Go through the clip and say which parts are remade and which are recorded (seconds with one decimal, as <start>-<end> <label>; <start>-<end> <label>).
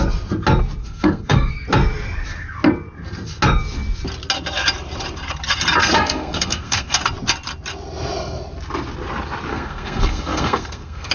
0.0-0.8 recorded; 0.8-1.5 remade; 1.5-5.8 recorded; 5.8-7.0 remade; 7.0-9.5 recorded; 9.5-11.1 remade